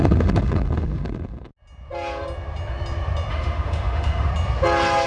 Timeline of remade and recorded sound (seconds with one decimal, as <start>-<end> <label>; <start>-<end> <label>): 0.0-1.5 remade; 1.5-3.3 recorded; 3.3-4.3 remade; 4.3-5.1 recorded